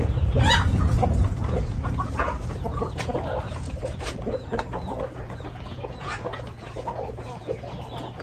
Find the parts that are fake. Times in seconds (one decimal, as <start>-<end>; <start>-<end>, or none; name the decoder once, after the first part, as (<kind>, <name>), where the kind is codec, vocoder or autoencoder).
0.0-8.2 (vocoder, Vocos)